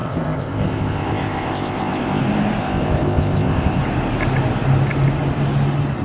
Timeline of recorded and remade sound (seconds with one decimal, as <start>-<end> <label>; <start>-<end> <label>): 0.0-2.2 remade; 2.2-2.6 recorded; 2.6-3.8 remade; 3.8-6.0 recorded